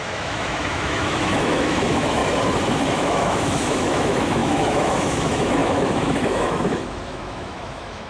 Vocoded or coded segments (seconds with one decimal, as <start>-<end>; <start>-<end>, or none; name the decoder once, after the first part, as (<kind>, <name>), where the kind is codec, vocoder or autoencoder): 0.0-2.2 (autoencoder, DAC-VAE); 2.9-8.1